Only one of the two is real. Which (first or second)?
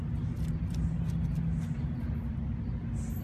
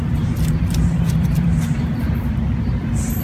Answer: first